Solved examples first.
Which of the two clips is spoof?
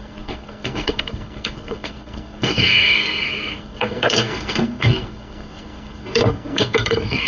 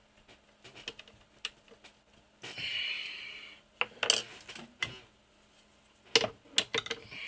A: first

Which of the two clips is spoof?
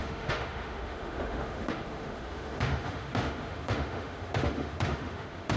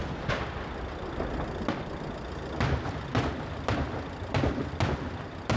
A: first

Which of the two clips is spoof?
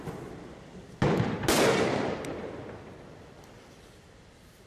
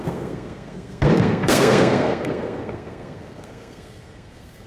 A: second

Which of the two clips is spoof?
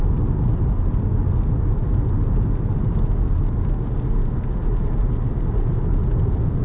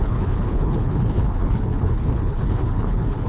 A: second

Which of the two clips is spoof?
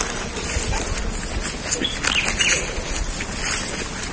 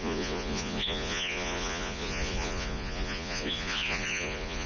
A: second